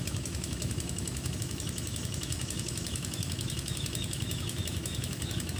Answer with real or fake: fake